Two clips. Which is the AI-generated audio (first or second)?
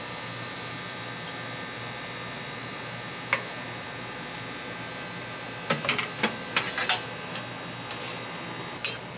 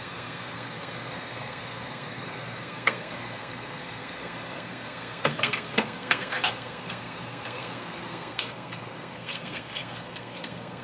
second